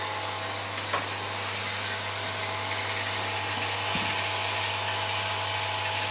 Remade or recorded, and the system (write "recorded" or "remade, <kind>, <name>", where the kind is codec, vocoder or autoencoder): recorded